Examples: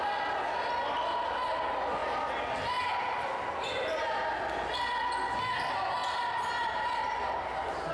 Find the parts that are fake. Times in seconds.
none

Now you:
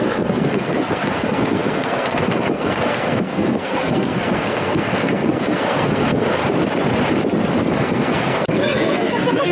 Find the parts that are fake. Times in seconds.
0.0-6.4 (codec, SNAC); 7.8-9.5

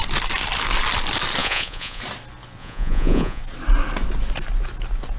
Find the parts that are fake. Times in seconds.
1.4-2.0 (vocoder, Vocos); 2.6-3.4

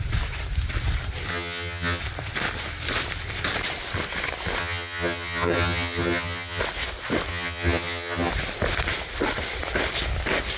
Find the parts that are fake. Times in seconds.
1.3-2.0 (vocoder, HiFi-GAN); 4.6-6.6; 7.3-8.3